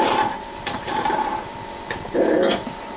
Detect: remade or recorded remade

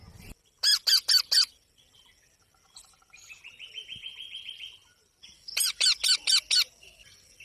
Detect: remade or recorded recorded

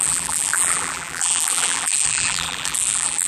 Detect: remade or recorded remade